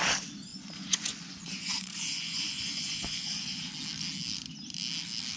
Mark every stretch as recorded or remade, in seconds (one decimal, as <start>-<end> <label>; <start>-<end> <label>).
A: 0.0-0.5 recorded; 0.5-3.7 remade; 3.7-5.4 recorded